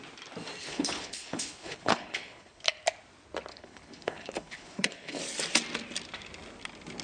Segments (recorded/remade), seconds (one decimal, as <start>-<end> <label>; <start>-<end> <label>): 0.0-0.6 recorded; 0.6-2.6 remade; 2.6-3.5 recorded; 3.5-5.2 remade; 5.2-7.0 recorded